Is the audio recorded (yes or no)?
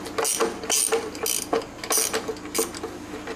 yes